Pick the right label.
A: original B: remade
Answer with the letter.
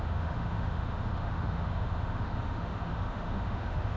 B